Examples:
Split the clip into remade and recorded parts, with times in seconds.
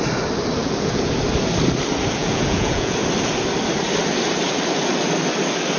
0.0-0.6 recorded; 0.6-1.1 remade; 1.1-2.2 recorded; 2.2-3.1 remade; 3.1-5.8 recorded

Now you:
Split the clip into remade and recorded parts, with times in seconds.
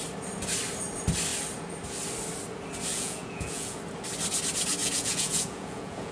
0.0-2.9 recorded; 2.9-3.8 remade; 3.8-4.8 recorded; 4.8-6.1 remade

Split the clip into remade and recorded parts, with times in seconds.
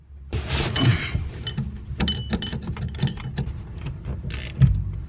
0.0-5.1 recorded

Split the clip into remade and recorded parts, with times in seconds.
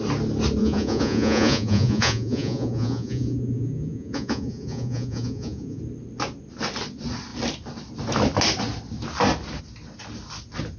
0.0-0.6 recorded; 0.6-5.8 remade; 5.8-10.8 recorded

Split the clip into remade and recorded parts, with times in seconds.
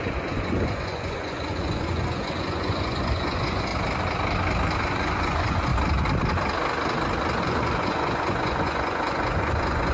0.0-3.7 remade; 3.7-4.8 recorded; 4.8-5.7 remade; 5.7-7.4 recorded; 7.4-9.9 remade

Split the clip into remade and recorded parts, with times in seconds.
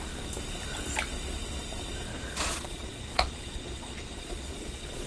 0.0-2.1 recorded; 2.1-5.1 remade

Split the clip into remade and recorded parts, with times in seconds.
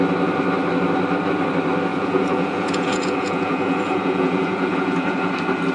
0.0-1.9 recorded; 1.9-5.3 remade; 5.3-5.7 recorded